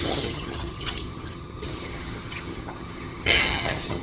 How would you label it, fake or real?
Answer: fake